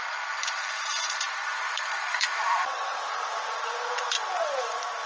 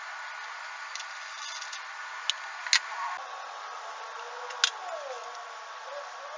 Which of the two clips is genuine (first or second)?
second